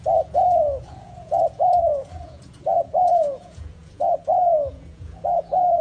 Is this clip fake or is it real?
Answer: fake